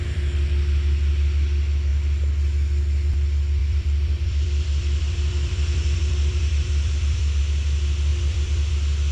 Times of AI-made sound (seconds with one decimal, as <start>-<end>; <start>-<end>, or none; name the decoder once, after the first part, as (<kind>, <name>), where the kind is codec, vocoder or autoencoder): 3.6-7.4 (vocoder, BigVGAN v2); 8.1-8.7